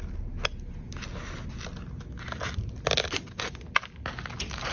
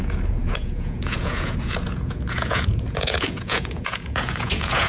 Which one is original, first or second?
first